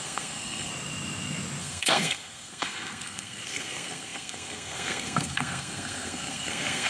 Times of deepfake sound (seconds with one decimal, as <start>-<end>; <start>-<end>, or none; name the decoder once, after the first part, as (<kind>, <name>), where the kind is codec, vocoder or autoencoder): 0.0-0.7 (codec, SNAC); 1.6-6.9